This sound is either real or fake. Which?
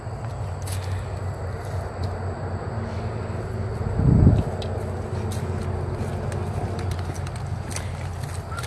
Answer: real